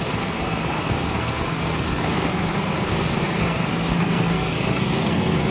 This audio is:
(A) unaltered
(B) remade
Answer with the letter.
B